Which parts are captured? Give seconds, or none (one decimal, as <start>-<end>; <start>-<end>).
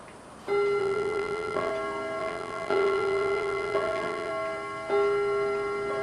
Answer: 0.0-0.8; 1.7-2.2; 4.3-6.0